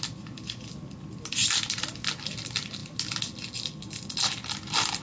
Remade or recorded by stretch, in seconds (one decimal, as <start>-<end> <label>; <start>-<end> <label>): 0.0-5.0 recorded